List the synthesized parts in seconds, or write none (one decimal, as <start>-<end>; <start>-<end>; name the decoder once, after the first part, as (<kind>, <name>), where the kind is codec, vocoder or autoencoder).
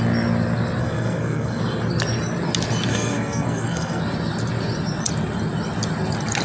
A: 0.8-1.6 (codec, SNAC); 2.9-4.0